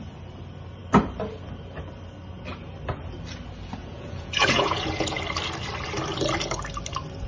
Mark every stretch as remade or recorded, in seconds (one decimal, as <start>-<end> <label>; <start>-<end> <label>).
0.0-3.8 recorded; 3.8-5.2 remade; 5.2-7.3 recorded